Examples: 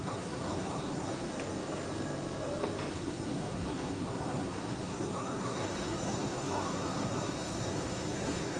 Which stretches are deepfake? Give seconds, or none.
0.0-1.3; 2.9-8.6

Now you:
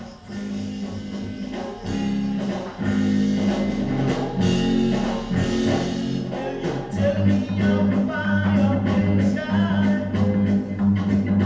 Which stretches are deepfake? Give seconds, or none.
none

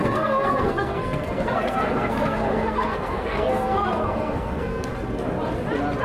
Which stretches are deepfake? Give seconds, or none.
0.0-4.9

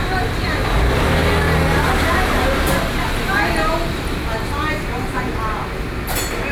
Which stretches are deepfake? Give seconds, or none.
none

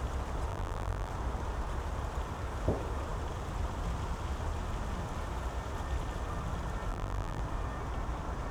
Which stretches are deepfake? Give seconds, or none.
0.5-1.1; 6.9-7.4

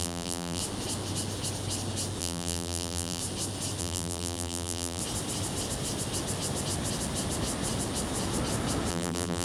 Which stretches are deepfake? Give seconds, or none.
0.0-0.6; 2.2-3.2; 3.8-5.0; 8.9-9.4